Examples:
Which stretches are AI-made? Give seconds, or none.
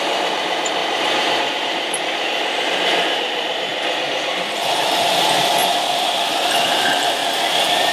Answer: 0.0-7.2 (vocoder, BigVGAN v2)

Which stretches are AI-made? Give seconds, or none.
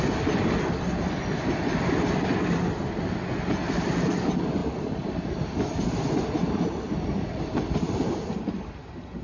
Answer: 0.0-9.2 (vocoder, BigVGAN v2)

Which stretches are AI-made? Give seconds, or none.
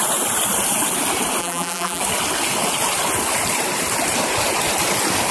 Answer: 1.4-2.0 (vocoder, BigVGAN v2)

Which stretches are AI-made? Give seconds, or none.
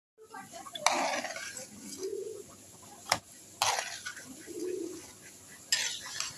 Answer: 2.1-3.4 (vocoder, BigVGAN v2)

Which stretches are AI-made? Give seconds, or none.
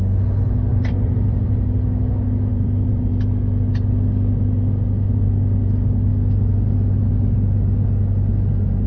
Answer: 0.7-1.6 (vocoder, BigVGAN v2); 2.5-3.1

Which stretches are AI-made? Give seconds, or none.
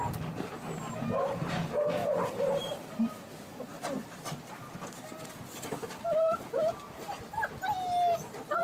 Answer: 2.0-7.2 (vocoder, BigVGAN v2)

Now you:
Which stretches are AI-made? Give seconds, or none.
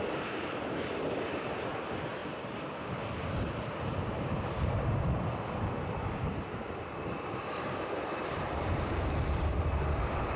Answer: 0.0-10.4 (vocoder, BigVGAN v2)